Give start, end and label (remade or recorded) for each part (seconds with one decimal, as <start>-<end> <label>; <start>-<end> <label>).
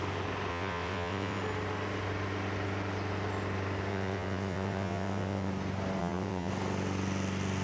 0.0-0.5 recorded; 0.5-1.4 remade; 1.4-3.9 recorded; 3.9-5.5 remade; 5.5-6.0 recorded; 6.0-6.5 remade; 6.5-7.6 recorded